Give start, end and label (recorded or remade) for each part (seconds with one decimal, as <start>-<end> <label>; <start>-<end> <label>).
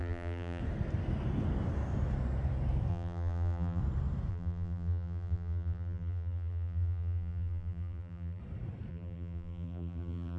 0.0-0.6 remade; 0.6-2.9 recorded; 2.9-3.8 remade; 3.8-4.3 recorded; 4.3-8.4 remade; 8.4-8.9 recorded; 8.9-10.4 remade